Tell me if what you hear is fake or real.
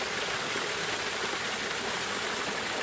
real